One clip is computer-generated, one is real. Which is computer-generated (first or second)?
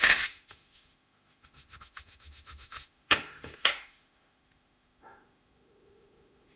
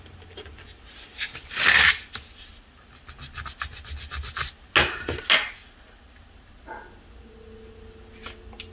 first